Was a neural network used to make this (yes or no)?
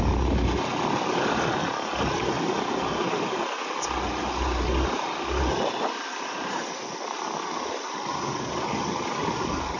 no